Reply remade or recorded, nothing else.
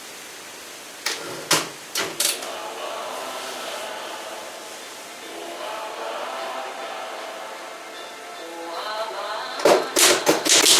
recorded